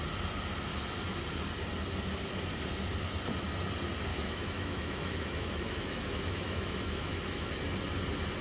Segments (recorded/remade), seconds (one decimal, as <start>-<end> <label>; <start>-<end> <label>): 0.0-4.1 recorded; 4.1-7.5 remade; 7.5-8.4 recorded